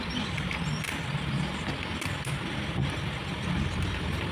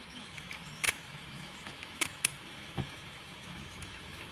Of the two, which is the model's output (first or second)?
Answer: second